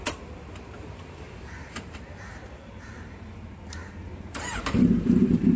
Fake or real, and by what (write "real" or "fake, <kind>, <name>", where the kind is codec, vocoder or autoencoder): fake, vocoder, BigVGAN v2